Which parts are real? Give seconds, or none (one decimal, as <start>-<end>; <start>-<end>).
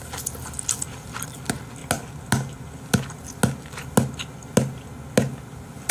0.0-5.9